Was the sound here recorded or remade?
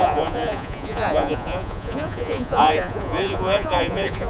remade